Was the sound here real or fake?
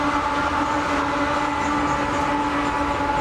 real